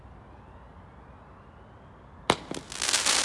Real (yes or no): yes